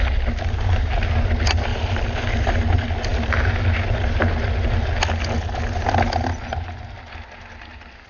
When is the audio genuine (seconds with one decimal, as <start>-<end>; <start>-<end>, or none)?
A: 0.0-8.1